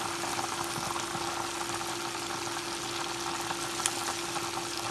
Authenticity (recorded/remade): recorded